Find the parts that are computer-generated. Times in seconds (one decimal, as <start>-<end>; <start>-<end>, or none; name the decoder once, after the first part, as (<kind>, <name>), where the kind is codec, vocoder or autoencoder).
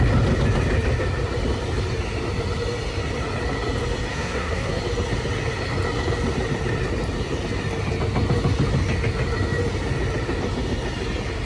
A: 4.1-4.8 (codec, SNAC)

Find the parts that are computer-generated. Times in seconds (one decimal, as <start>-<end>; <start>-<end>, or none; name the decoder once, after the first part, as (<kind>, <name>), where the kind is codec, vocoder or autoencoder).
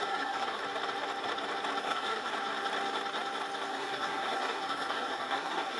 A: 0.0-0.6 (codec, SNAC); 1.8-2.3; 3.7-5.8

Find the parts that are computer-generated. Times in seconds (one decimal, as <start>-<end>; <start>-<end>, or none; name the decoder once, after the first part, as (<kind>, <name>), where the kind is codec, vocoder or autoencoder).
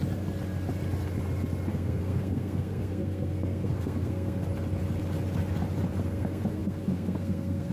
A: 1.7-4.4 (codec, SNAC); 6.0-7.7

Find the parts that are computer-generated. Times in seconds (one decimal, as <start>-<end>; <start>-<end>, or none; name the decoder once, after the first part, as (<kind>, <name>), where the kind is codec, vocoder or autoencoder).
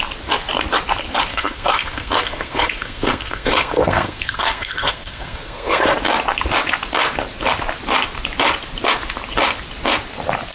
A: 1.3-5.8 (codec, SNAC)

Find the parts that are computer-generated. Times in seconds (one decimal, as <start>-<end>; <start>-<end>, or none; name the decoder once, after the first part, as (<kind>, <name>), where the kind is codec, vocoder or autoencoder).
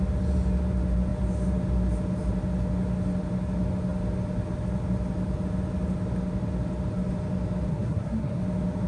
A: 7.7-8.4 (codec, SNAC)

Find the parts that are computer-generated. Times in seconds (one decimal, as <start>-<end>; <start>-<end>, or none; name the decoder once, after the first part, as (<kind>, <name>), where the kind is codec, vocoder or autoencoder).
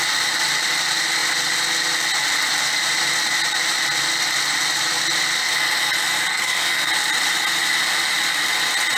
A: 6.3-6.9 (codec, SNAC)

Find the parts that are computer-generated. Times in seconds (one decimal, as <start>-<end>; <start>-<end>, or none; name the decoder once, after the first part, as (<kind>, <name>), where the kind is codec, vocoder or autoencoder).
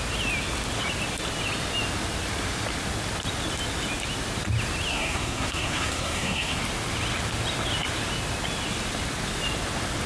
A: 4.9-6.6 (codec, SNAC)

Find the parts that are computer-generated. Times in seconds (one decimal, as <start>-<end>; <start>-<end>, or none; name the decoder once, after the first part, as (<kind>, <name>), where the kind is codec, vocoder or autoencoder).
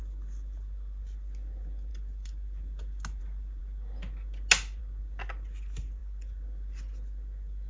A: none